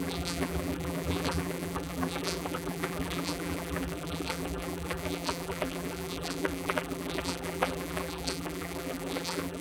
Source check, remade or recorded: remade